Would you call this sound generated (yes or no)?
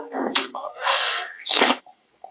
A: yes